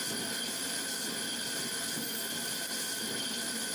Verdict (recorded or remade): recorded